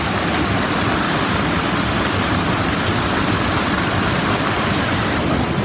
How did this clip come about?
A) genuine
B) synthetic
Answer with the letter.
A